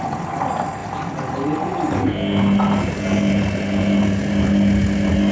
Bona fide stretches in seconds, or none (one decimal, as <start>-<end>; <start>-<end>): 0.0-5.3